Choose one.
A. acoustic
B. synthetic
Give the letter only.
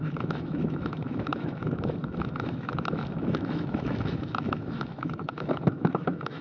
B